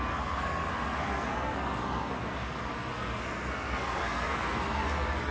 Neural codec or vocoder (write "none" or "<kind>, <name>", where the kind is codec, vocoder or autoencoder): codec, SNAC